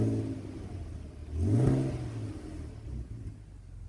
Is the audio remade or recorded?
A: recorded